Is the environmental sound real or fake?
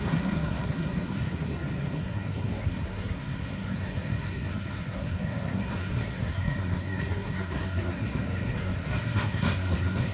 fake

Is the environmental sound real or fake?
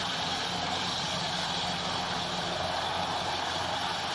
real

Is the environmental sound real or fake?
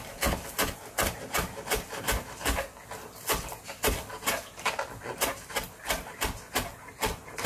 real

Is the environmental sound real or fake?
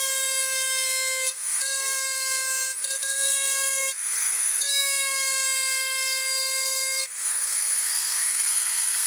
fake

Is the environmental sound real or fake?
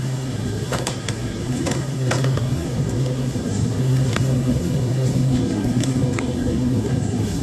fake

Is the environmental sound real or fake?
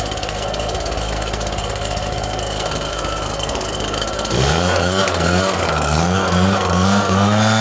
fake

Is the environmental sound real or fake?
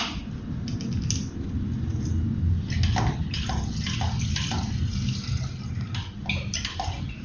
real